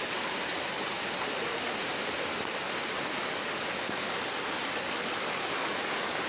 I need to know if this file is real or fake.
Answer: real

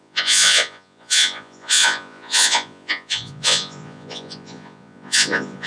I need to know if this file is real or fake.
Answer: fake